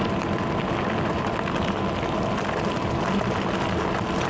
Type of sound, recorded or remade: recorded